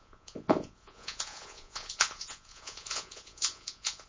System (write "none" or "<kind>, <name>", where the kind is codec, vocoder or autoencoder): vocoder, Vocos